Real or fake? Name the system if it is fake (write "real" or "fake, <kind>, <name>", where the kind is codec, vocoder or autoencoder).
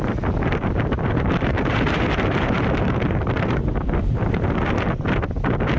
fake, vocoder, BigVGAN v2